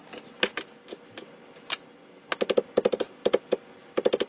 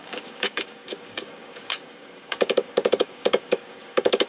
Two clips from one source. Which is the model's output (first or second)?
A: second